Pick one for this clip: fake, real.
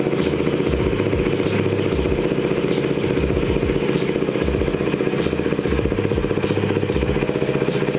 real